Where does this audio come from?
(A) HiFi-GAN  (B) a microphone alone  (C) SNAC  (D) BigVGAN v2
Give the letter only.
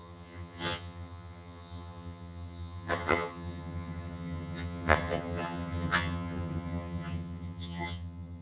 A